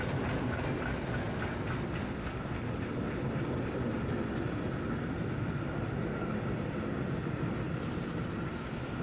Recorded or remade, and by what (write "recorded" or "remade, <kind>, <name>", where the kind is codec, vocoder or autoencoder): recorded